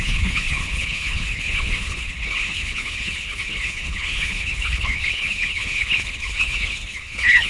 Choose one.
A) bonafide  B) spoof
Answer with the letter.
B